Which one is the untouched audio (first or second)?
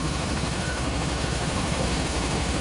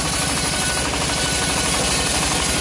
second